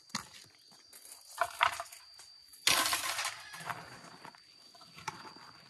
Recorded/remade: recorded